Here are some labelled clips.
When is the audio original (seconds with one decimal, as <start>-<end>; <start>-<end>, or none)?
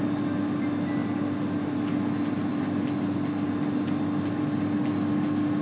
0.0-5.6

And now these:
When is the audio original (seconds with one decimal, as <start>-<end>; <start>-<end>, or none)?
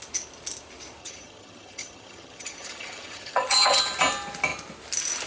0.0-1.0; 3.8-5.3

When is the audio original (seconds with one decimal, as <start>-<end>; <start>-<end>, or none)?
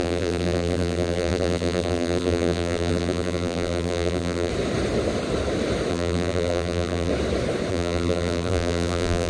4.5-5.9; 7.1-7.7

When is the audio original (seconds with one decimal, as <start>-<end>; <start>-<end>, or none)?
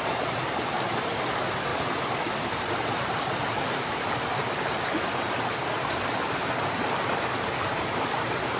0.9-1.7; 5.9-8.6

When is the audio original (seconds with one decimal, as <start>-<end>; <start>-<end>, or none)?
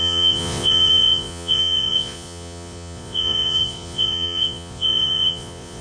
none